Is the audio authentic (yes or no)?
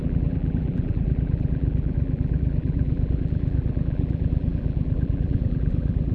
no